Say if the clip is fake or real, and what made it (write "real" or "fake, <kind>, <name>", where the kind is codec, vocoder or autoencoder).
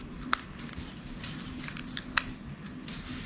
real